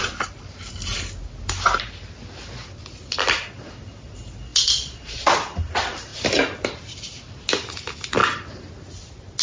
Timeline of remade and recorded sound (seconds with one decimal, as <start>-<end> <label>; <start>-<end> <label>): 0.0-4.5 recorded; 4.5-5.3 remade; 5.3-9.4 recorded